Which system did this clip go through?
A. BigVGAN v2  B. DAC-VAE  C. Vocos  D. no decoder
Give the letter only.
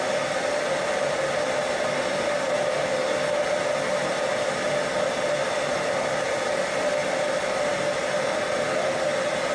D